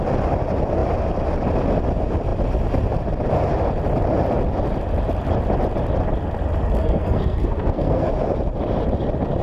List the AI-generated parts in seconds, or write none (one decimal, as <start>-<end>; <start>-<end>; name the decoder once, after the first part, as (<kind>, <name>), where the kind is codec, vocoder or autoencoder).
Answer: 6.8-8.1 (codec, SNAC)